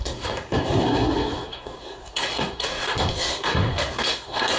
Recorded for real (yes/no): no